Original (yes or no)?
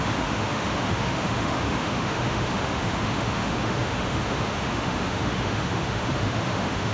no